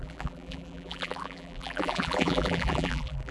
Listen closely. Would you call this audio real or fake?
fake